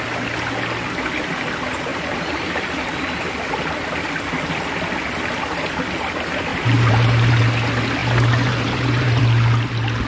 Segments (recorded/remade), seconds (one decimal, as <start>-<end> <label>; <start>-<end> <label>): 0.0-1.9 recorded; 1.9-2.5 remade; 2.5-6.5 recorded; 6.5-7.4 remade; 7.4-8.0 recorded; 8.0-9.2 remade; 9.2-10.1 recorded